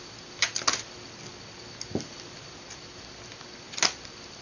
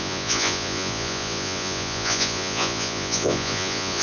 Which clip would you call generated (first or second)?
second